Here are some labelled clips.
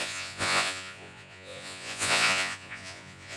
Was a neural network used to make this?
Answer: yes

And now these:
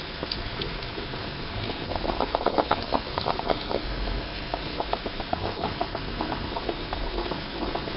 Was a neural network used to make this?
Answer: yes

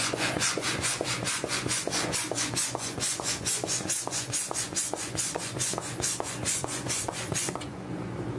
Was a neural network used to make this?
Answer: yes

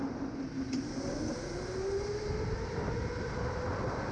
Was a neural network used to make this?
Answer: no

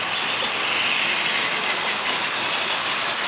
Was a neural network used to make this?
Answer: no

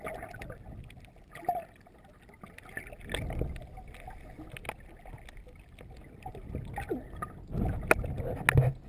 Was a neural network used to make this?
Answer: no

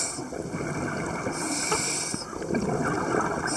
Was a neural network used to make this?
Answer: no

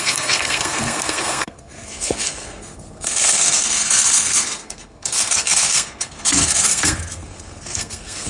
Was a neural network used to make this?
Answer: yes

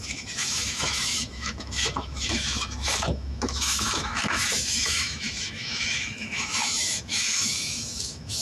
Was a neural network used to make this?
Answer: yes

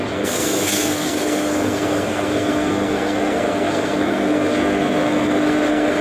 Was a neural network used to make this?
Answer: yes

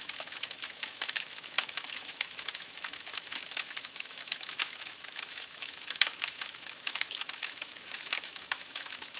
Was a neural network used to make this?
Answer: yes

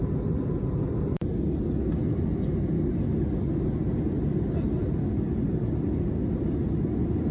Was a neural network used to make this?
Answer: no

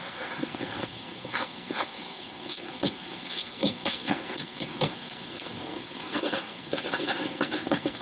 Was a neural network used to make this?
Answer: yes